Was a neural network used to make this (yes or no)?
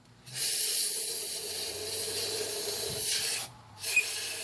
no